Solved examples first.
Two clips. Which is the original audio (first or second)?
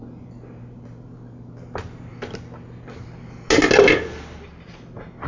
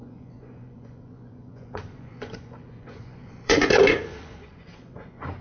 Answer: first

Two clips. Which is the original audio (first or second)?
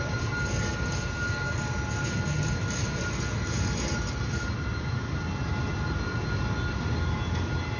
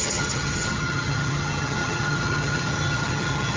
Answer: first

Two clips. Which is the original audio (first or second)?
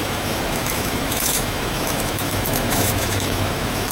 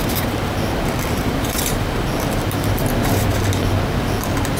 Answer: second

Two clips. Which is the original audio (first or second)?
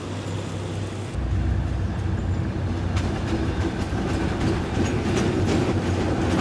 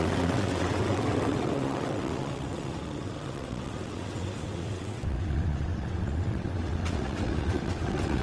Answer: first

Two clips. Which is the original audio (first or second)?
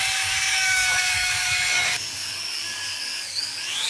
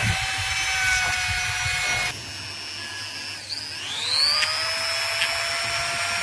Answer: second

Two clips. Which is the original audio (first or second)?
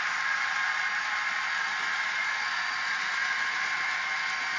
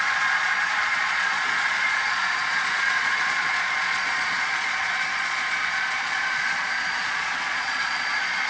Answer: first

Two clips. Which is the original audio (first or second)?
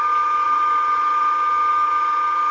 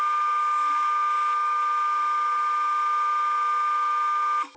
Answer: second